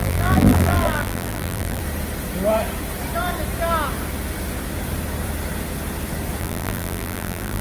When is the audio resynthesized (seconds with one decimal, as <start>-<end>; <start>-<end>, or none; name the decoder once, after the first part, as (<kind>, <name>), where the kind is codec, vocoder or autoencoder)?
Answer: 0.0-1.8 (vocoder, BigVGAN v2); 6.4-7.6